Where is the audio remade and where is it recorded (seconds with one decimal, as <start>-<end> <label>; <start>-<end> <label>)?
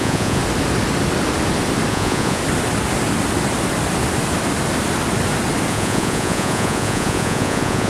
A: 0.0-0.4 remade; 0.4-1.9 recorded; 1.9-2.4 remade; 2.4-5.7 recorded; 5.7-7.9 remade